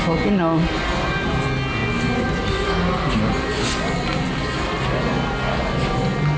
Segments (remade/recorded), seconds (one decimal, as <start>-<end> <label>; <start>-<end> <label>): 0.0-6.4 recorded